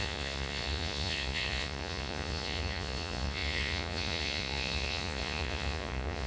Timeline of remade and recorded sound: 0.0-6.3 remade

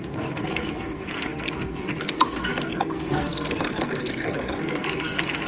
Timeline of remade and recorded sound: 0.0-5.5 remade

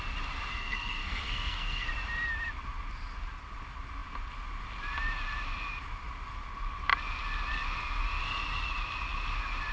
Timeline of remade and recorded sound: 0.0-0.5 recorded; 0.5-1.9 remade; 1.9-9.7 recorded